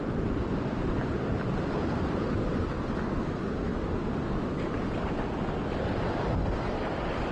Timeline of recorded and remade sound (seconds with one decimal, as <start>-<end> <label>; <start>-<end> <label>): 0.0-2.3 remade; 2.3-7.3 recorded